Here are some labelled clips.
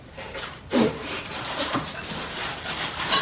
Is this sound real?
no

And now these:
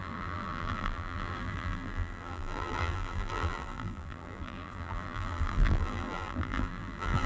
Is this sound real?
no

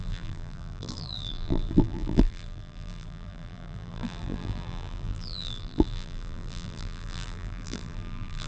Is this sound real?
no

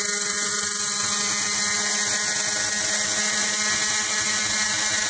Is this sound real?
yes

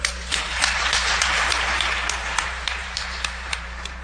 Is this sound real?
no